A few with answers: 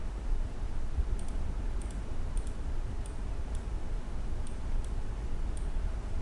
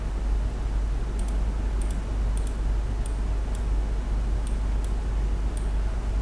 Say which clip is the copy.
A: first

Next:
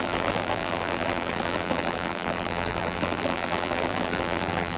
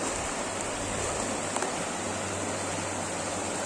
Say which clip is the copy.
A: first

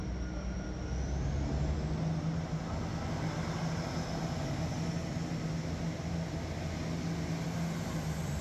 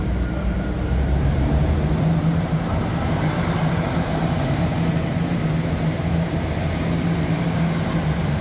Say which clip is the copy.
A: second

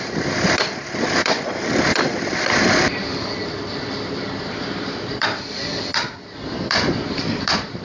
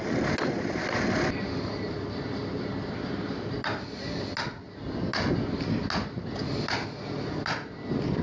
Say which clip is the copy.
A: first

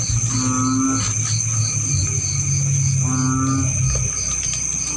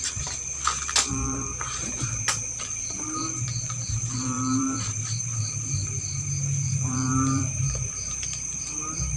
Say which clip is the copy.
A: second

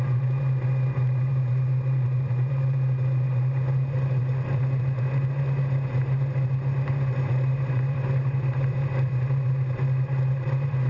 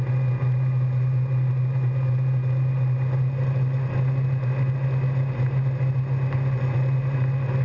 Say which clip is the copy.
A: first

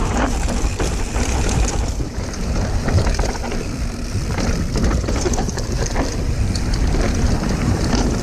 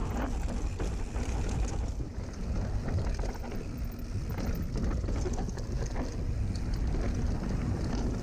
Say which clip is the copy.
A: first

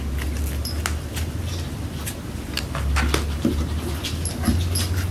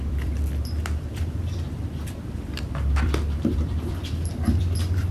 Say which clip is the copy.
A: second